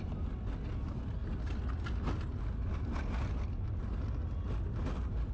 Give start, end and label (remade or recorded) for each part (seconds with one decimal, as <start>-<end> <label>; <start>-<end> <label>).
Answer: 0.0-5.3 recorded